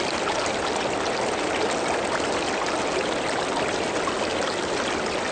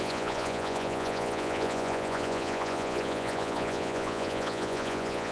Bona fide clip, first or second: first